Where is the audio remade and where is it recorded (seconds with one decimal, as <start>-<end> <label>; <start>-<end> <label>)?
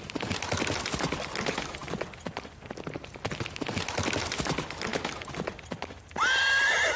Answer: 0.0-7.0 recorded